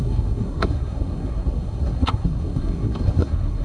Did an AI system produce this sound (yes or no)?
yes